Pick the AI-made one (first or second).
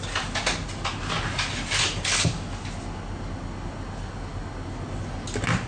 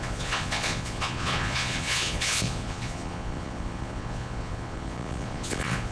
second